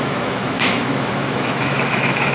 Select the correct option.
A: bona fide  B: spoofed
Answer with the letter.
B